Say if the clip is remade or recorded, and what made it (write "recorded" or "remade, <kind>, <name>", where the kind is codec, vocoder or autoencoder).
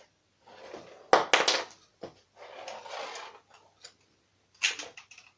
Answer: recorded